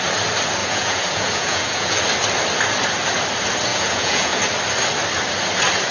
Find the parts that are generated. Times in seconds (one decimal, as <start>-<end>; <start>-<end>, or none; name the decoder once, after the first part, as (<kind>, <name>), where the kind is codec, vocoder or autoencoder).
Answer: 0.6-2.0 (vocoder, Vocos); 3.7-4.4